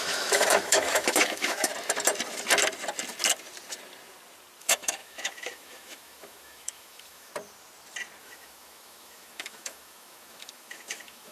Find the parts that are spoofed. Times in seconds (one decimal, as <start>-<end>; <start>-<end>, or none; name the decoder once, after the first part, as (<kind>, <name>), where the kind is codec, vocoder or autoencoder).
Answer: 0.0-1.7 (autoencoder, DAC-VAE); 4.6-7.3; 8.2-11.3